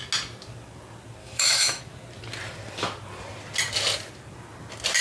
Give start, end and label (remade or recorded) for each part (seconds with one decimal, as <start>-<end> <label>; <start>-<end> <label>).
0.0-1.2 recorded; 1.2-1.8 remade; 1.8-5.0 recorded